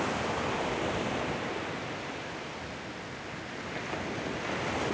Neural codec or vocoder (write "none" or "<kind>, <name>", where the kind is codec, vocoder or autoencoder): none